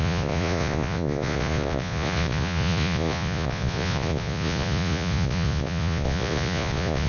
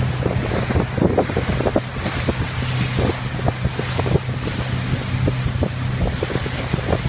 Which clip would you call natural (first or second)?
second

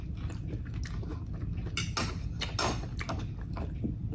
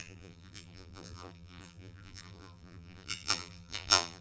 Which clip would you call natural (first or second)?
first